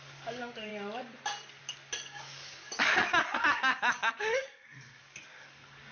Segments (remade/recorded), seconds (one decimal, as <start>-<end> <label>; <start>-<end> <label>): 0.0-0.7 remade; 0.7-1.6 recorded; 1.6-5.9 remade